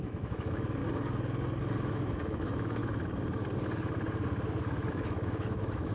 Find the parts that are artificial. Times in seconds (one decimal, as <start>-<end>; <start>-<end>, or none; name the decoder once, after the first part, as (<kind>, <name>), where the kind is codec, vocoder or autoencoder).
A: 0.0-0.8 (autoencoder, DAC-VAE); 1.9-2.8; 4.9-5.9